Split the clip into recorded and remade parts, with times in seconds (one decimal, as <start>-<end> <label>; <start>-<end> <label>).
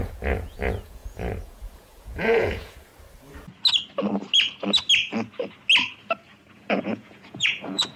0.0-2.9 remade; 2.9-6.5 recorded; 6.5-8.0 remade